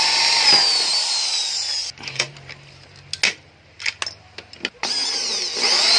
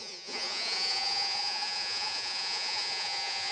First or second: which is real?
first